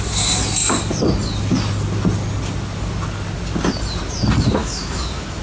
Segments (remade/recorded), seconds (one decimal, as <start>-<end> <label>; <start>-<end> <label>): 0.0-4.6 recorded; 4.6-5.4 remade